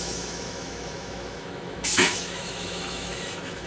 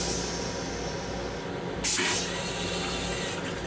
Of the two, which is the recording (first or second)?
second